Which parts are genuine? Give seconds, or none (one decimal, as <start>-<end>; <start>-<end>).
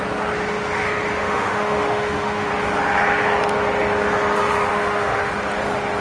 0.0-1.2; 2.5-4.7; 5.3-6.0